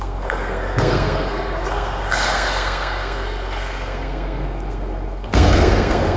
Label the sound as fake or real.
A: fake